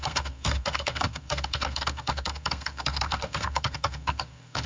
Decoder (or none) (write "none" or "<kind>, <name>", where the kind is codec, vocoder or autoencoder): codec, SNAC